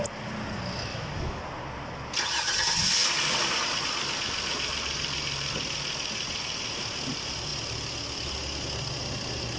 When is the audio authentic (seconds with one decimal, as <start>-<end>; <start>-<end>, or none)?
0.0-0.9; 1.4-9.6